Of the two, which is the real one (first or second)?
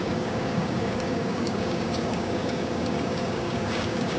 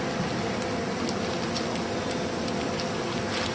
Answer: second